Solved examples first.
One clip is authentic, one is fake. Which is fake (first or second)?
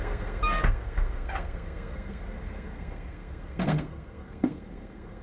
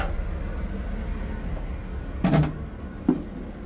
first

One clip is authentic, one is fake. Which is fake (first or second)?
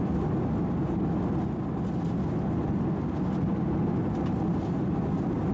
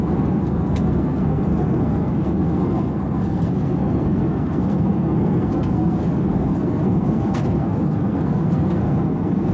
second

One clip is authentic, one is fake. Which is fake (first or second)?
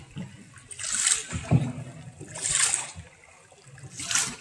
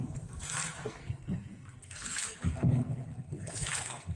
second